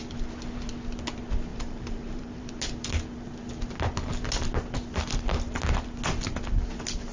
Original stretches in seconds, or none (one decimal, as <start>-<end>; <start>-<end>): 0.0-1.5; 2.5-7.1